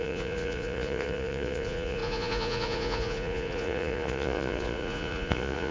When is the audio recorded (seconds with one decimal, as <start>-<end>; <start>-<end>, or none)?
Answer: none